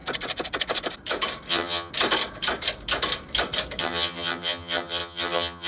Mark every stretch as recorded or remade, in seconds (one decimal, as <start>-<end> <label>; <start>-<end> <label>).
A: 0.0-1.5 recorded; 1.5-1.9 remade; 1.9-3.8 recorded; 3.8-5.7 remade

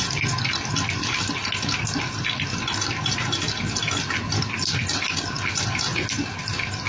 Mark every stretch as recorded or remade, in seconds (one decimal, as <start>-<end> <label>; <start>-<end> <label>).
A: 0.0-6.9 recorded

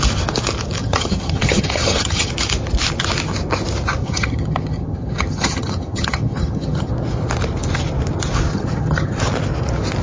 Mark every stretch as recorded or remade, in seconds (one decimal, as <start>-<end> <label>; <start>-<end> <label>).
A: 0.0-0.8 recorded; 0.8-2.3 remade; 2.3-4.0 recorded; 4.0-6.9 remade; 6.9-8.5 recorded; 8.5-9.2 remade; 9.2-10.0 recorded

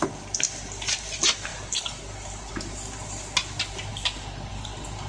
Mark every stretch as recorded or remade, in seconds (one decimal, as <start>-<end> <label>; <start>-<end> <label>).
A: 0.0-5.1 recorded